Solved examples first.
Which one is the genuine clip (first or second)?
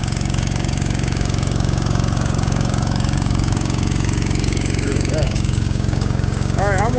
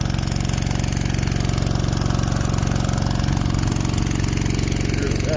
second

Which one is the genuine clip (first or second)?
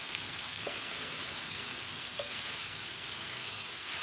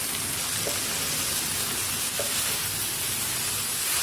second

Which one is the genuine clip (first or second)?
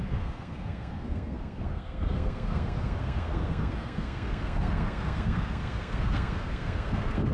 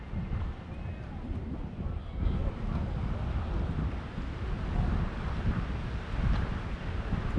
second